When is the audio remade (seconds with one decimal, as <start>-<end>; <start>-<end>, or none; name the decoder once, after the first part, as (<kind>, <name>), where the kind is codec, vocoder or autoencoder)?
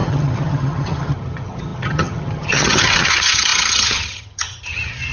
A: 0.0-5.1 (vocoder, HiFi-GAN)